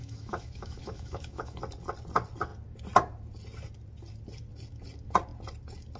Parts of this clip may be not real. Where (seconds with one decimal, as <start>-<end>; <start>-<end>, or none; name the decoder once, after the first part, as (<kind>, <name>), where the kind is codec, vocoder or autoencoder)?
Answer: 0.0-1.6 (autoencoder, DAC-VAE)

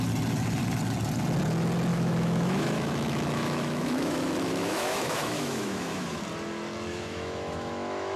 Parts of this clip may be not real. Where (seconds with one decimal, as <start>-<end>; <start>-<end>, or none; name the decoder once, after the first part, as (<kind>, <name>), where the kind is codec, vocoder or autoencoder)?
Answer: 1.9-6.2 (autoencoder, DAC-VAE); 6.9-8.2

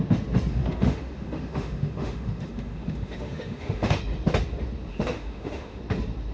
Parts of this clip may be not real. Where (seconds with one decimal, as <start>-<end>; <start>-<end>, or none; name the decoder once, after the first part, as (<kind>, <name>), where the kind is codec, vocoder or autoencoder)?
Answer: 0.5-4.0 (autoencoder, DAC-VAE); 4.9-5.8

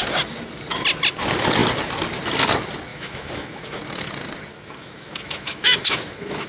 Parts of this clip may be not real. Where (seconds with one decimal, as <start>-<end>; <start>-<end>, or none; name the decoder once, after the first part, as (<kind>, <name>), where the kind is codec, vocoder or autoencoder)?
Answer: 2.9-3.8 (autoencoder, DAC-VAE); 4.5-6.5

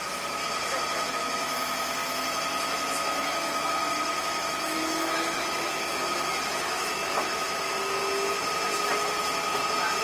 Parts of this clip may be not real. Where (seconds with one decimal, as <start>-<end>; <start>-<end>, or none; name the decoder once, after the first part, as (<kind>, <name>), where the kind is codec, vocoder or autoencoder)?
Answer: 0.0-0.4 (autoencoder, DAC-VAE); 1.1-8.0

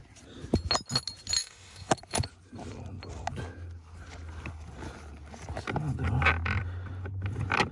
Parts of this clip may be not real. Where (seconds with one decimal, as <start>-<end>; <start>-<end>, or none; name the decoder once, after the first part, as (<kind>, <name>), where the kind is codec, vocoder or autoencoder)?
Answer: 1.4-1.9 (autoencoder, DAC-VAE)

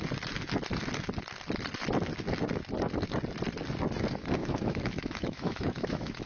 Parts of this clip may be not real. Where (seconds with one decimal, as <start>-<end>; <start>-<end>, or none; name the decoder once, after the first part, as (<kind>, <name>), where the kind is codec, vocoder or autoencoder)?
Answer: 4.4-6.3 (autoencoder, DAC-VAE)

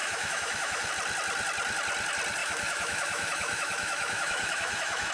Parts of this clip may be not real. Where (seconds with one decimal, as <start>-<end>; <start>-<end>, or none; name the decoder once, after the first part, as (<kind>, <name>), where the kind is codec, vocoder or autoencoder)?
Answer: 0.0-0.9 (autoencoder, DAC-VAE); 2.4-5.1